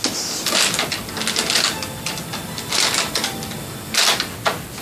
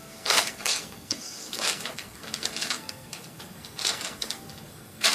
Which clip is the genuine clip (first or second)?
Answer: first